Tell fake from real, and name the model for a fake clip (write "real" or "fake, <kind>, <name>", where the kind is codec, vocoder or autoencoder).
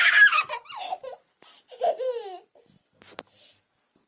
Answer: real